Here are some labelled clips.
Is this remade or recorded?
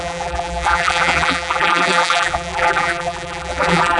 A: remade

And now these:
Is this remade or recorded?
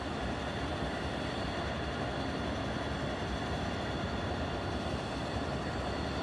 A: recorded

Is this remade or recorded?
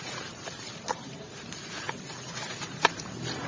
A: remade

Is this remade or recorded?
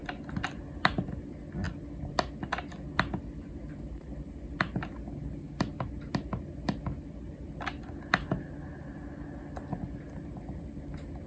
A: recorded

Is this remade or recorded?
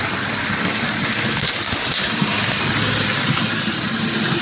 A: recorded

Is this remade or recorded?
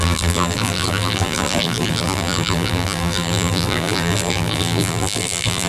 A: remade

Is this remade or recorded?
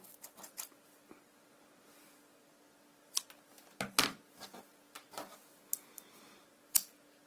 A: recorded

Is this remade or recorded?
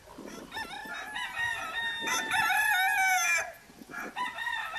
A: recorded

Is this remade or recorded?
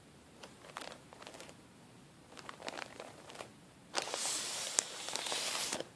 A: remade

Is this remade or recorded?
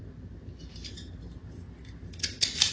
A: recorded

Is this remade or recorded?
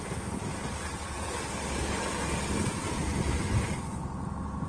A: recorded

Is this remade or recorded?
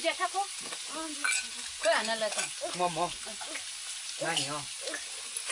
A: recorded